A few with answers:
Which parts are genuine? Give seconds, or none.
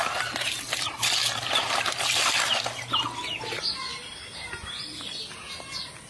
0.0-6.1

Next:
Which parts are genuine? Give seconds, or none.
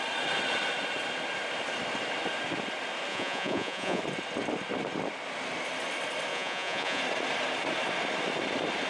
0.0-3.1; 4.0-6.3; 7.0-8.9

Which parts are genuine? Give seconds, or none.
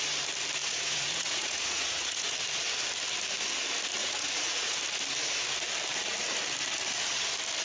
0.0-0.6; 2.3-4.0; 4.8-7.6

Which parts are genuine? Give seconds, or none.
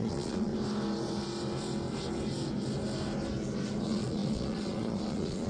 0.5-3.8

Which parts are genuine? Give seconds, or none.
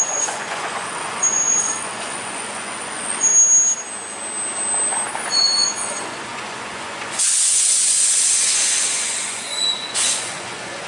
3.3-5.2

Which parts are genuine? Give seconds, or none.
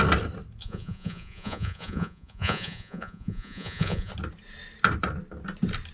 0.0-0.6; 4.1-5.9